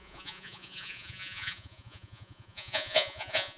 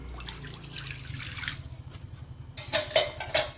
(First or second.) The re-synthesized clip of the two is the first